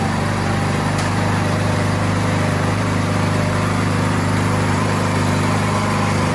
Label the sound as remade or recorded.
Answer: remade